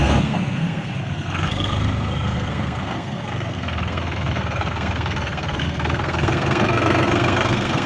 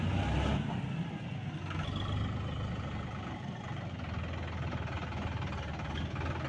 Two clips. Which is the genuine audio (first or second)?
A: second